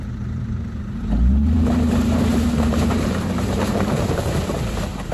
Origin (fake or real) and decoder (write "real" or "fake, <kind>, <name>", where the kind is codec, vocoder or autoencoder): fake, vocoder, BigVGAN v2